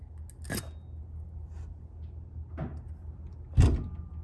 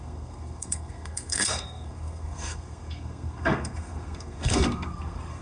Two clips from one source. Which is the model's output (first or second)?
second